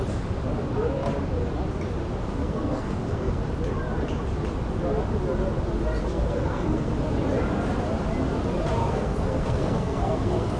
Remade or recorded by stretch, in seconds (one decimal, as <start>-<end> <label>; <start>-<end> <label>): 0.0-2.4 recorded; 2.4-3.4 remade; 3.4-6.0 recorded; 6.0-6.9 remade; 6.9-8.8 recorded; 8.8-10.6 remade